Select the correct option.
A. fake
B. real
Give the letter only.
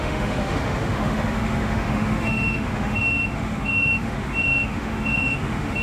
A